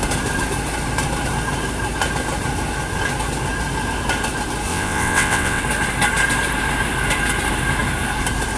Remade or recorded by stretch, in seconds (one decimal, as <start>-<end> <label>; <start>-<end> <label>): 0.0-4.7 recorded; 4.7-5.6 remade; 5.6-8.6 recorded